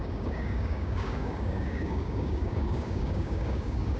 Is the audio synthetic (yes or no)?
yes